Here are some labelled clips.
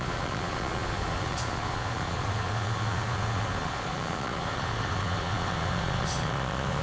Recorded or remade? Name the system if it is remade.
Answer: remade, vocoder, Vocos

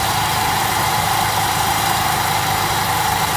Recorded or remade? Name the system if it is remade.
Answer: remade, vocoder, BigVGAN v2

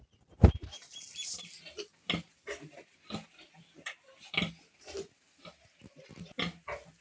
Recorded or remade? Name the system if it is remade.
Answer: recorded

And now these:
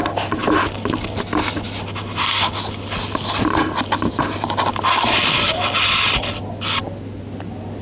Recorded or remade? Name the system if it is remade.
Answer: recorded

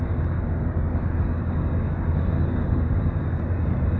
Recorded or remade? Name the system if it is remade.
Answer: remade, codec, DAC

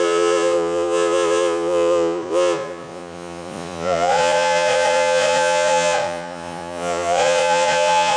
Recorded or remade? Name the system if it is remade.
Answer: remade, vocoder, Vocos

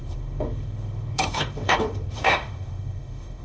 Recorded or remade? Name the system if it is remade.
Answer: remade, autoencoder, DAC-VAE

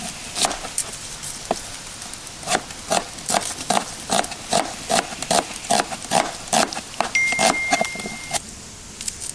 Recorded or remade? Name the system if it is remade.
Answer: recorded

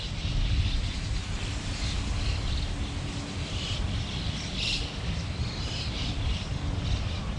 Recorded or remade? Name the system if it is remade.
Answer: recorded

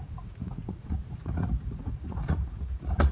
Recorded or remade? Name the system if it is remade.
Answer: remade, vocoder, Vocos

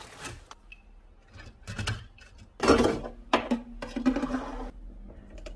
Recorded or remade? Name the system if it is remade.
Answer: recorded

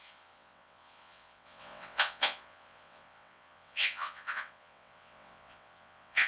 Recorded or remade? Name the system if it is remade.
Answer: remade, vocoder, WaveNeXt